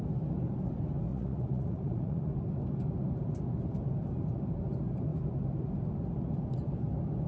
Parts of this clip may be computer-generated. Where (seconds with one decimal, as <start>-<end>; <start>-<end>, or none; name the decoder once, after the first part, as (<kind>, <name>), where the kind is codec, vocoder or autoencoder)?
1.1-2.3 (vocoder, Vocos)